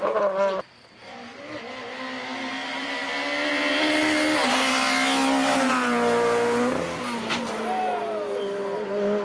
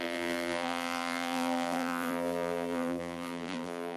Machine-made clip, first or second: second